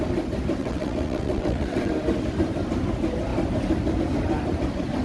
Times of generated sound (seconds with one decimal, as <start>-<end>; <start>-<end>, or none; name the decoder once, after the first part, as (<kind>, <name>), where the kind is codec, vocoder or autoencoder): 0.6-1.9 (vocoder, WaveNeXt)